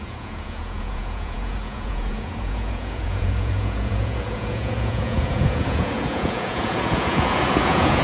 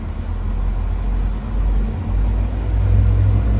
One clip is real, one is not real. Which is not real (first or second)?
first